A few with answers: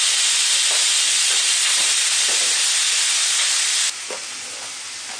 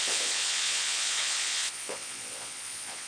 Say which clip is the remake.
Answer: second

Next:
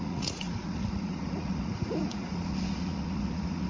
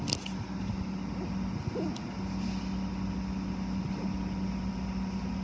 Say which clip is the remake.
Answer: first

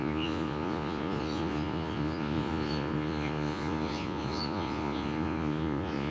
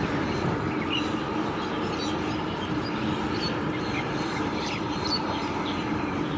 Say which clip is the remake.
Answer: first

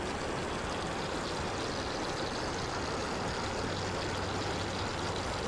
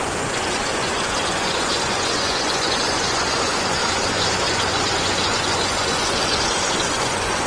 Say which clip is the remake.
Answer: second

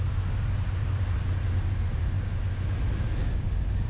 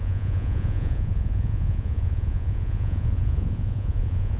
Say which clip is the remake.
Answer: second